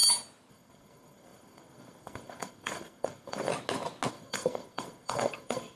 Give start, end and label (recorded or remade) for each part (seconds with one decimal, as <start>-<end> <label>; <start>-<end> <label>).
0.0-0.5 recorded; 0.5-3.5 remade; 3.5-4.1 recorded; 4.1-5.8 remade